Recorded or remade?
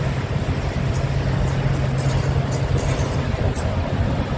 recorded